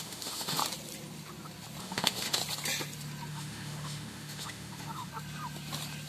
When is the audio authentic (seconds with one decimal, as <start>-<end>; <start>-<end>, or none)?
0.6-1.8; 2.4-3.3; 5.1-6.1